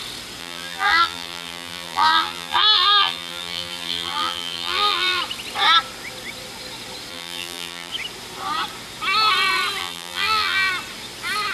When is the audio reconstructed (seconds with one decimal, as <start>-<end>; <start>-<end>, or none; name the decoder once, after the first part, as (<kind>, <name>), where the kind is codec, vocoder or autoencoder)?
0.4-5.2 (vocoder, BigVGAN v2); 7.1-7.9; 9.8-10.7